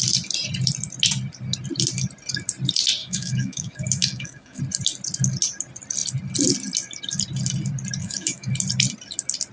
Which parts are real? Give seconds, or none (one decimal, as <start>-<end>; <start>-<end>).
0.0-3.0; 4.6-8.0; 8.5-9.5